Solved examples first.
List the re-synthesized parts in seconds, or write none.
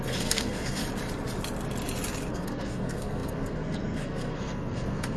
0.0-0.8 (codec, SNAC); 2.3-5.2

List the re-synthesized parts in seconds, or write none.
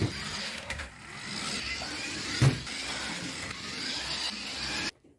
0.4-0.9 (codec, SNAC)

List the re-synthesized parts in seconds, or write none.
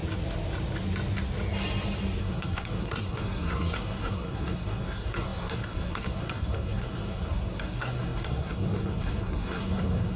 2.2-10.2 (codec, SNAC)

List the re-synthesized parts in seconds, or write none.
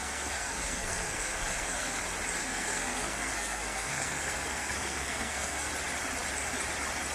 0.0-2.0 (codec, SNAC); 2.4-5.7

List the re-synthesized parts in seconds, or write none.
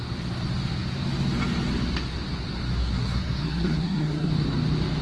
2.8-4.3 (codec, SNAC)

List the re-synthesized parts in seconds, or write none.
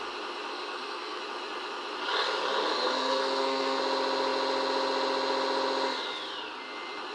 0.5-1.2 (codec, SNAC); 2.7-3.8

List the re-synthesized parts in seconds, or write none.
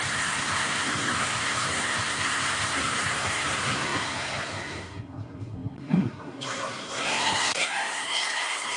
0.0-8.8 (codec, SNAC)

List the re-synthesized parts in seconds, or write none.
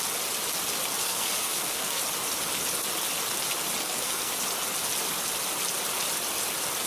1.0-2.0 (codec, SNAC); 3.8-4.3